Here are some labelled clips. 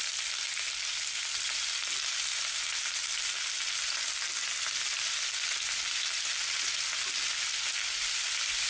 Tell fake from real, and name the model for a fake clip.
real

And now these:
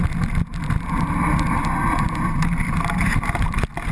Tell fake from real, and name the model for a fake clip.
real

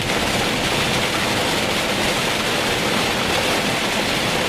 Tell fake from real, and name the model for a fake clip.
real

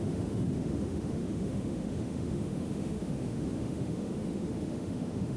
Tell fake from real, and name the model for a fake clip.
fake, autoencoder, DAC-VAE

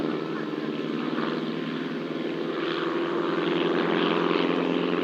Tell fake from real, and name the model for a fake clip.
real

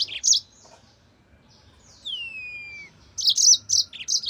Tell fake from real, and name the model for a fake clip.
real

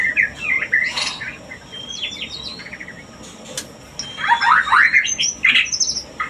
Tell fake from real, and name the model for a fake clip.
real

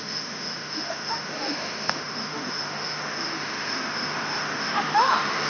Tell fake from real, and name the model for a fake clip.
fake, autoencoder, DAC-VAE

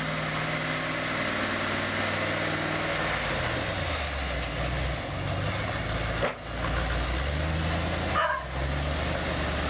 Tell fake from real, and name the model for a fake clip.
real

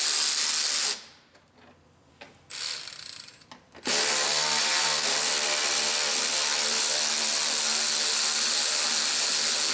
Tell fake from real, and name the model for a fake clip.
real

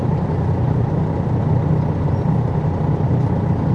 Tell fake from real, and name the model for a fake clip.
real